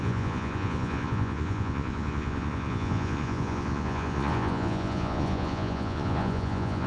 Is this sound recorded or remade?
remade